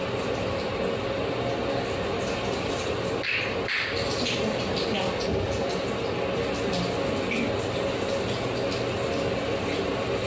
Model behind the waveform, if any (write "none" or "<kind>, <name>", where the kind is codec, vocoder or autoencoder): none